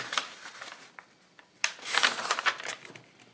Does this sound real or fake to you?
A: real